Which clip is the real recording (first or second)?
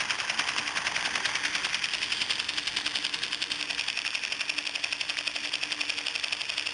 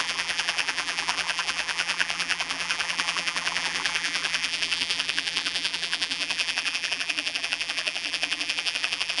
first